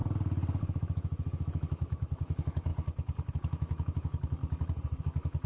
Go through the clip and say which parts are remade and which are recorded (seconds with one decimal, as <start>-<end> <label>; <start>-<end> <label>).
0.0-0.6 recorded; 0.6-2.7 remade; 2.7-3.3 recorded; 3.3-4.4 remade; 4.4-5.0 recorded; 5.0-5.5 remade